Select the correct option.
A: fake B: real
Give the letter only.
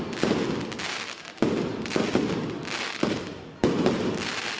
B